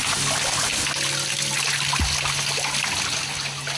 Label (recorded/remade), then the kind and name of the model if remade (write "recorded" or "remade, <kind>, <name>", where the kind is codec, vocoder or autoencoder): recorded